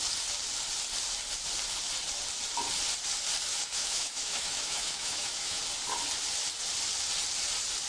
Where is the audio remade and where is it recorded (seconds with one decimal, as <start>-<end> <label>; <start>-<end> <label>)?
0.0-3.5 recorded; 3.5-5.6 remade; 5.6-7.9 recorded

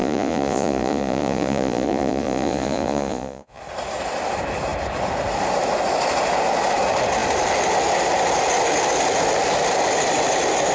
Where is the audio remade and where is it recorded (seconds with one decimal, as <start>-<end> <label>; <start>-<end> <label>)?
0.0-3.6 remade; 3.6-10.7 recorded

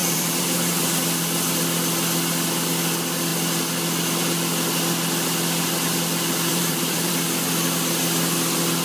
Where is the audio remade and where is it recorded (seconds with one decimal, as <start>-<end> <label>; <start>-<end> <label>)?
0.0-0.8 remade; 0.8-6.5 recorded; 6.5-7.1 remade; 7.1-8.8 recorded

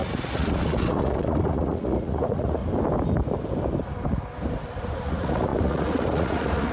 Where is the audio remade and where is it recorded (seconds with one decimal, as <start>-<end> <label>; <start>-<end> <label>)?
0.0-2.6 remade; 2.6-5.0 recorded; 5.0-6.7 remade

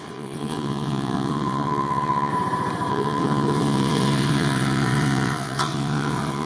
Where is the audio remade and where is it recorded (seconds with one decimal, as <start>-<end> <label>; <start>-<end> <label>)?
0.0-2.3 remade; 2.3-2.9 recorded; 2.9-6.5 remade